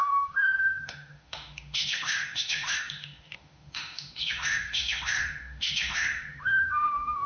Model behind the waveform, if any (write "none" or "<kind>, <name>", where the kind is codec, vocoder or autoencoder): autoencoder, DAC-VAE